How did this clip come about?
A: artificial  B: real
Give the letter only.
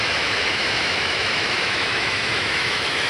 A